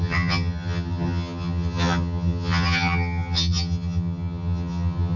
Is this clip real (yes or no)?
no